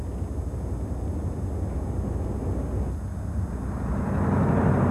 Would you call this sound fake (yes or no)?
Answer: no